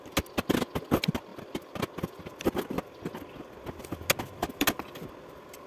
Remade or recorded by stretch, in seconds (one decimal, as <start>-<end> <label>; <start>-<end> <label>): 0.0-5.7 recorded